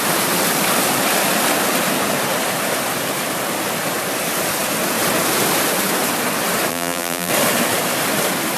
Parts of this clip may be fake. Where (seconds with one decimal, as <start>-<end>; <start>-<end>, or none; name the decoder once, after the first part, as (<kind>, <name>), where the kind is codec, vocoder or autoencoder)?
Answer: 6.7-7.3 (vocoder, BigVGAN v2)